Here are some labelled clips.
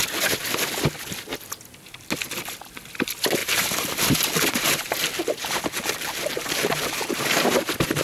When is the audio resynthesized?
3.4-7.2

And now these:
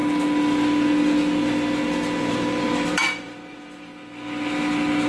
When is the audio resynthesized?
2.2-3.9